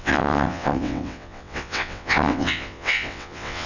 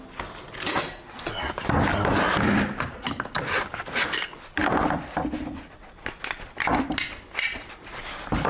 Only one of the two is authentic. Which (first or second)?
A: second